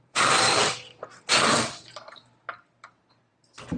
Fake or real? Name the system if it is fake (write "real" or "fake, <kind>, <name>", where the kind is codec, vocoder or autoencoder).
fake, vocoder, BigVGAN v2